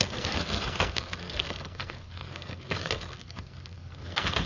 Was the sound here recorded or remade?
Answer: remade